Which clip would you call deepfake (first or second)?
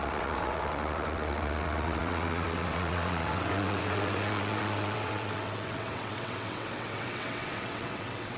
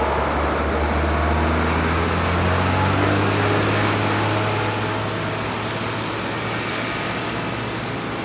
first